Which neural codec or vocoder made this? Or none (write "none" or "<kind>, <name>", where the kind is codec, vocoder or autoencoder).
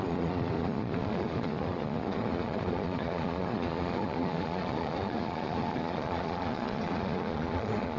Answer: vocoder, Vocos